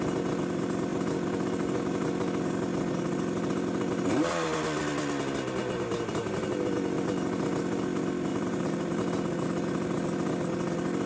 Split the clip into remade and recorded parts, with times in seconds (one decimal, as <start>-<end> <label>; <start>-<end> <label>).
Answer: 0.0-5.6 recorded; 5.6-6.5 remade; 6.5-8.3 recorded; 8.3-9.0 remade; 9.0-11.1 recorded